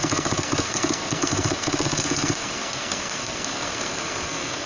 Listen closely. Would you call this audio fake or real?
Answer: fake